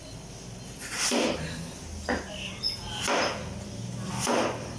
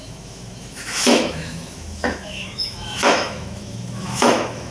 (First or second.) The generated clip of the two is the second